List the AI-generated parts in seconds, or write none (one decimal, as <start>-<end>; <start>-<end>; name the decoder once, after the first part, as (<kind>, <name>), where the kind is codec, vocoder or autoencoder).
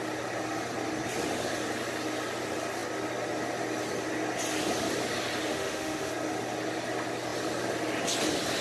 5.5-6.1 (autoencoder, DAC-VAE)